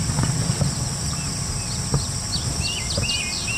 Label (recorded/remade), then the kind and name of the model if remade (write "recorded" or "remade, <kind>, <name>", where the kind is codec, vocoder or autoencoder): recorded